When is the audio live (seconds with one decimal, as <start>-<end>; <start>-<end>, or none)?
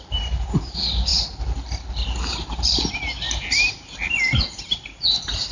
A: 0.0-5.5